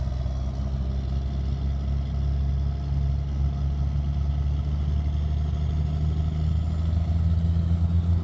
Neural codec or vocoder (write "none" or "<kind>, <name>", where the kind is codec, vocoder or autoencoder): none